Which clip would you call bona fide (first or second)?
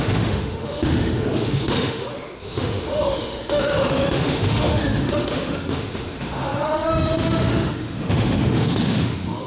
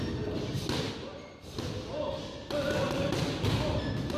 second